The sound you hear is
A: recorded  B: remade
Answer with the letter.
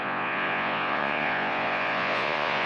B